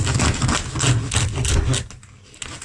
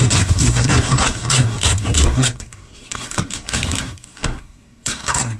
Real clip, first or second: first